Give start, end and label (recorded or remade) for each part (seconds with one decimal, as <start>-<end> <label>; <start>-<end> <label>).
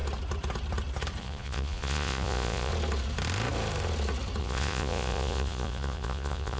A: 0.0-1.2 recorded; 1.2-2.7 remade; 2.7-4.4 recorded; 4.4-6.6 remade